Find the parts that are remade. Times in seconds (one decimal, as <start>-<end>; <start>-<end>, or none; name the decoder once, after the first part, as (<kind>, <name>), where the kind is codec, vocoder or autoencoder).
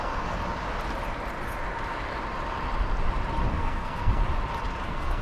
0.0-0.4 (codec, SNAC); 3.5-4.2; 4.8-5.2